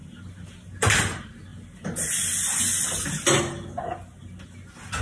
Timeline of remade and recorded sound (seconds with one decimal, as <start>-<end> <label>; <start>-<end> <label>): 0.0-5.0 recorded